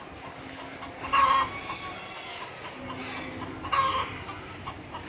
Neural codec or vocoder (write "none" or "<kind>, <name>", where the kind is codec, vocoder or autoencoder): none